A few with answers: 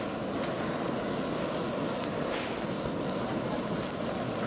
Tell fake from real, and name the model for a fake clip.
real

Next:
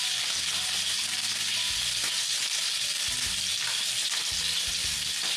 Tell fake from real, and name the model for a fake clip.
real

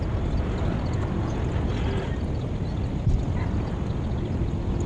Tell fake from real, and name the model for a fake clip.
real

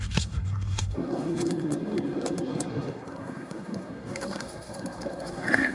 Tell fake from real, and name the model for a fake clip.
fake, codec, SNAC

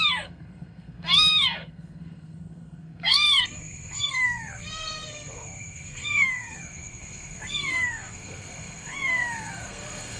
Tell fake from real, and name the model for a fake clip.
fake, codec, SNAC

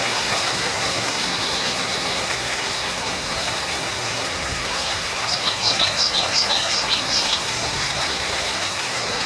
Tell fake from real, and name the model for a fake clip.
fake, codec, SNAC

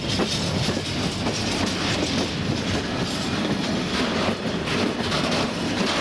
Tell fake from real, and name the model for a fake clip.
real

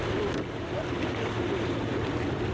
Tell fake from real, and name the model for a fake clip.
real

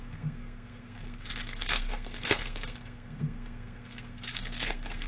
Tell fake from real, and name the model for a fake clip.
fake, codec, SNAC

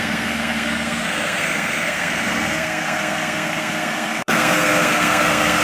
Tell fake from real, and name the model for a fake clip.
fake, codec, SNAC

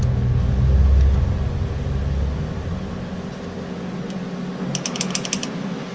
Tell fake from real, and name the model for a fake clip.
real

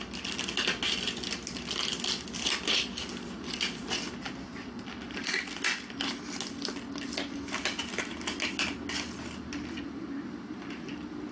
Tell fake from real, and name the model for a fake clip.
real